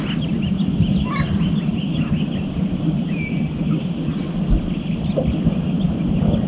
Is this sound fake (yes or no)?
no